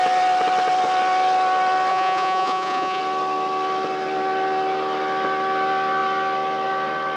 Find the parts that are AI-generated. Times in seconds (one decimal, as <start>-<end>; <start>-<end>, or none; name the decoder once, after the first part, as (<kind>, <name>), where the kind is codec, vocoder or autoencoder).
1.9-3.0 (vocoder, Vocos)